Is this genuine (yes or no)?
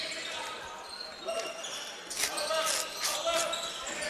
yes